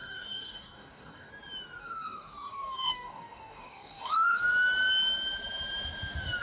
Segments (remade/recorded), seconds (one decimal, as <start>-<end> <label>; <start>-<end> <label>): 0.0-1.3 remade; 1.3-1.8 recorded; 1.8-4.4 remade; 4.4-6.4 recorded